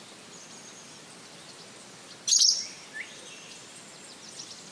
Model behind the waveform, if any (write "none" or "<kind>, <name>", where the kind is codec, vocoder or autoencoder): none